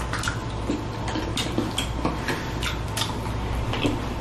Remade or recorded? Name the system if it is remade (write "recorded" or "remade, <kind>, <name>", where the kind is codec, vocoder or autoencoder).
recorded